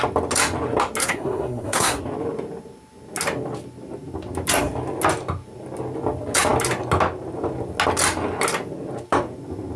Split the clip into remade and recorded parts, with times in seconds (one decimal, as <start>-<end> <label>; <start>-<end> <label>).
0.0-1.0 recorded; 1.0-2.0 remade; 2.0-9.8 recorded

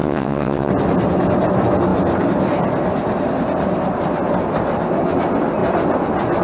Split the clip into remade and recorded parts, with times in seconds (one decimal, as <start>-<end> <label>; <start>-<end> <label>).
0.0-0.7 remade; 0.7-6.4 recorded

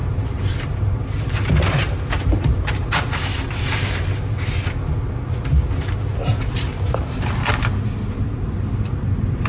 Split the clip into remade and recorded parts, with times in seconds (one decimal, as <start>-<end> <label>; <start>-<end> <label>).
0.0-3.0 remade; 3.0-6.1 recorded; 6.1-7.5 remade; 7.5-9.5 recorded

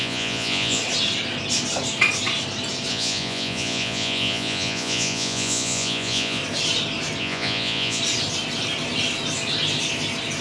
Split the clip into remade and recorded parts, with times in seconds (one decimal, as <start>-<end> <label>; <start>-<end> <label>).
0.0-0.8 remade; 0.8-2.9 recorded; 2.9-6.4 remade; 6.4-7.2 recorded; 7.2-8.0 remade; 8.0-10.4 recorded

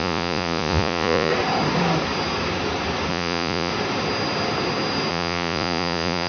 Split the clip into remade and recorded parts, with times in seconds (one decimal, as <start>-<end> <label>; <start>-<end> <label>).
0.0-1.3 remade; 1.3-3.1 recorded; 3.1-3.7 remade; 3.7-5.1 recorded; 5.1-6.3 remade